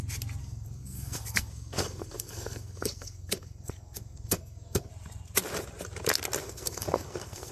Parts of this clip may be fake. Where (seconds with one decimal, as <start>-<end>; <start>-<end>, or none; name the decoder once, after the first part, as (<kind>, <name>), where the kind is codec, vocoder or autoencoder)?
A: 0.4-4.9 (codec, SNAC); 6.4-7.5